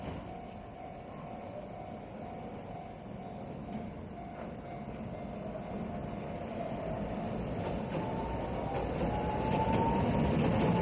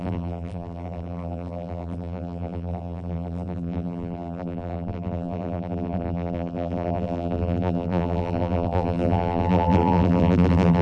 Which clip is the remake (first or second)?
second